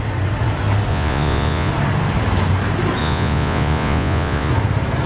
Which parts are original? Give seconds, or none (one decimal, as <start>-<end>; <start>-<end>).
0.0-0.9; 1.7-3.0; 4.5-5.1